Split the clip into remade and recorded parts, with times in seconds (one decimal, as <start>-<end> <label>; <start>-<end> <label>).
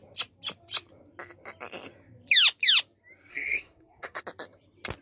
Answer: 0.0-3.3 recorded; 3.3-4.2 remade; 4.2-5.0 recorded